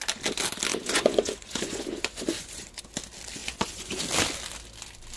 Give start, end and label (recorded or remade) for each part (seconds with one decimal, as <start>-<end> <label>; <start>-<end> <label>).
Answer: 0.0-0.7 recorded; 0.7-2.8 remade; 2.8-3.4 recorded; 3.4-4.0 remade; 4.0-5.2 recorded